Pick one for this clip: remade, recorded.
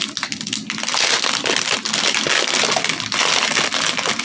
recorded